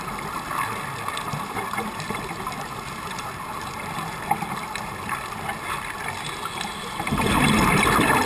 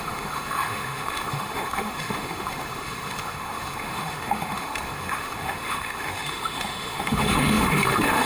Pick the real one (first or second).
first